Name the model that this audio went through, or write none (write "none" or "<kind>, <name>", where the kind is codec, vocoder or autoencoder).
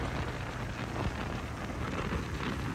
none